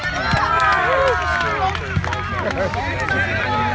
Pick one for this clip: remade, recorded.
recorded